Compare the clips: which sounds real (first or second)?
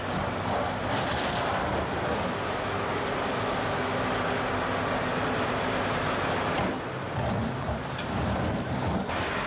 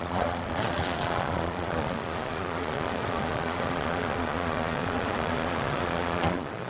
first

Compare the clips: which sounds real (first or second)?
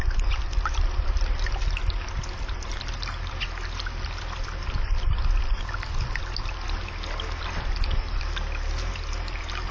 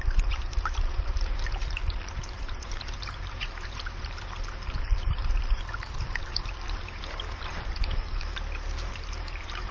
first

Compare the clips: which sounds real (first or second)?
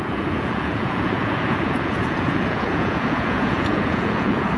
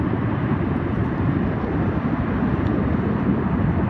second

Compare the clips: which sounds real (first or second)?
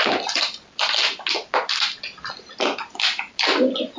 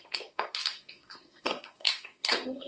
first